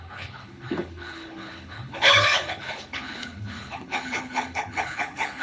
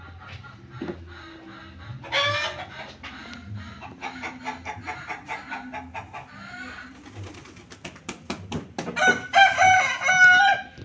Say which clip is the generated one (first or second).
first